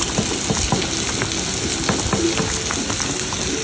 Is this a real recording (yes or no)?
yes